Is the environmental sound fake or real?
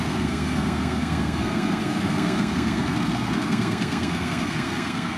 fake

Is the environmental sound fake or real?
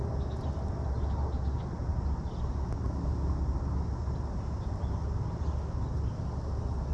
real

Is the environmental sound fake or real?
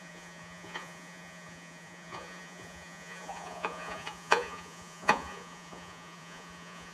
fake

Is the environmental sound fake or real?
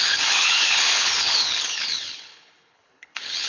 fake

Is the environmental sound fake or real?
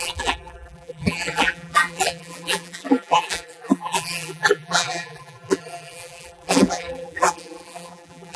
fake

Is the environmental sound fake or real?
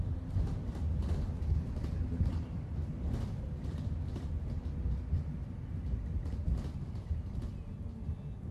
real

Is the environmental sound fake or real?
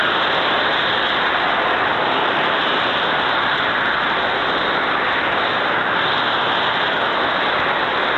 real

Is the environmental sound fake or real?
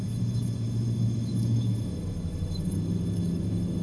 fake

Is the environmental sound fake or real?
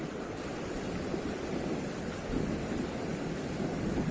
real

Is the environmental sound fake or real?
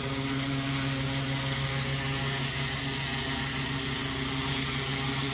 real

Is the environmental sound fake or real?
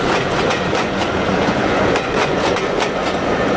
fake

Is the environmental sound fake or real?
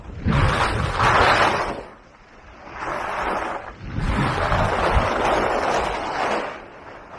real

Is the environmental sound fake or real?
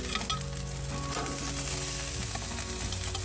real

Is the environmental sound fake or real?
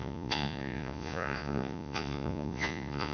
fake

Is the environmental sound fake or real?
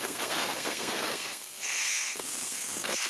fake